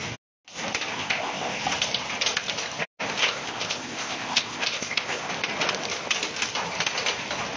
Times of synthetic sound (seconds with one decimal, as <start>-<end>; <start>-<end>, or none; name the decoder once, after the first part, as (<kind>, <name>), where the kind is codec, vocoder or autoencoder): 0.9-1.6 (codec, ZipCodec); 3.2-5.3